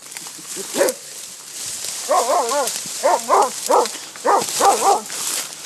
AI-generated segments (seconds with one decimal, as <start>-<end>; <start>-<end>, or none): none